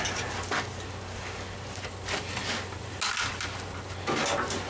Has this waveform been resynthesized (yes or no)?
no